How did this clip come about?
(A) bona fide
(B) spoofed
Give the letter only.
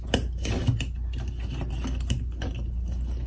A